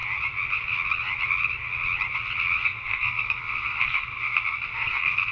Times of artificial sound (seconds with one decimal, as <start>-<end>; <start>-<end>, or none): 2.6-5.3